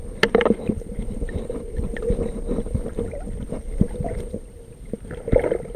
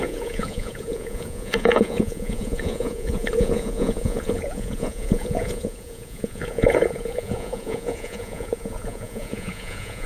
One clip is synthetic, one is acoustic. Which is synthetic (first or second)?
second